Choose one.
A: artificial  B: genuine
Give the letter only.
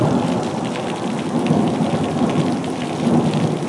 B